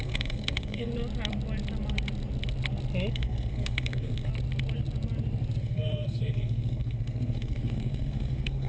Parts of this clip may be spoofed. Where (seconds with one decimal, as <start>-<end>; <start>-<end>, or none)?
0.0-0.9; 3.1-4.3; 5.6-8.7